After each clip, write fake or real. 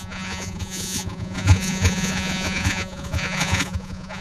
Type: fake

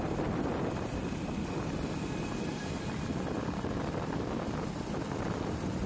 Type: real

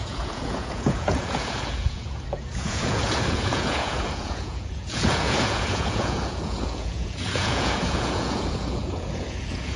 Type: fake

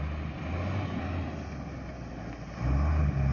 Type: real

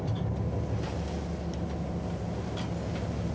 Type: real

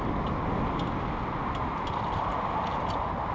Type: real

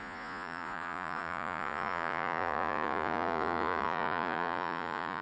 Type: fake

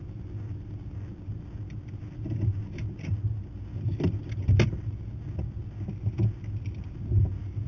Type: real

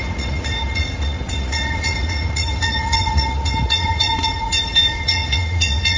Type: fake